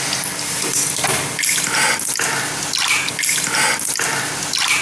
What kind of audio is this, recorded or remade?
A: recorded